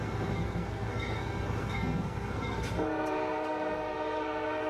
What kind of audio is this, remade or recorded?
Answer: remade